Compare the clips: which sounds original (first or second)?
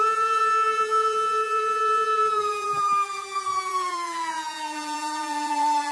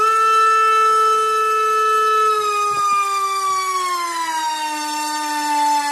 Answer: second